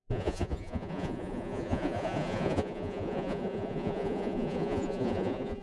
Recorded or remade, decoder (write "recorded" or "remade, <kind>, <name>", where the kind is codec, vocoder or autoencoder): remade, vocoder, Vocos